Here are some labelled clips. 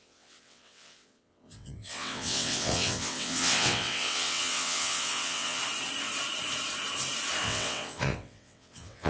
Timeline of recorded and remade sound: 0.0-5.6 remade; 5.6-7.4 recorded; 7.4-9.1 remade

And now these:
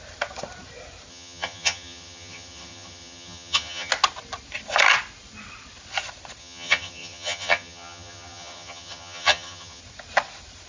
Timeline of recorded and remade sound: 0.0-1.1 recorded; 1.1-3.9 remade; 3.9-6.4 recorded; 6.4-9.8 remade; 9.8-10.7 recorded

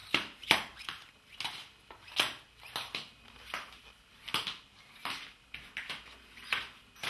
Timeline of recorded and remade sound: 0.0-1.1 remade; 1.1-7.1 recorded

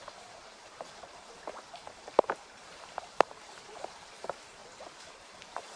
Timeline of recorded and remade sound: 0.0-4.6 remade; 4.6-5.1 recorded; 5.1-5.8 remade